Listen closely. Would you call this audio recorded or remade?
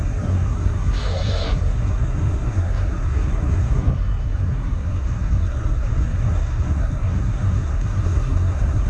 remade